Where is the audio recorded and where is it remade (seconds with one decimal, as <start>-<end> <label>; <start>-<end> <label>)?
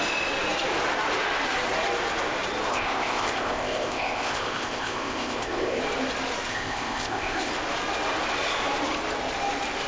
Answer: 0.0-2.7 recorded; 2.7-5.8 remade; 5.8-6.5 recorded; 6.5-7.5 remade; 7.5-9.9 recorded